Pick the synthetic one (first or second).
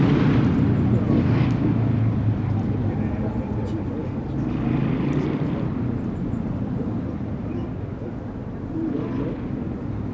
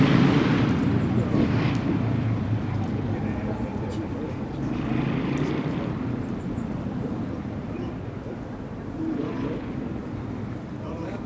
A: second